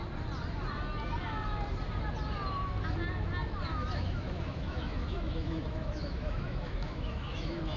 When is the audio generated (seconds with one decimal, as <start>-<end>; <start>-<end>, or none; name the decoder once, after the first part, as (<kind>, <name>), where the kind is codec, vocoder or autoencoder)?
3.7-7.8 (autoencoder, DAC-VAE)